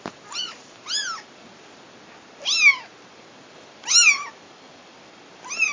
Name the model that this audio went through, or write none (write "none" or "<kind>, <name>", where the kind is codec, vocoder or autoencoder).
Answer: none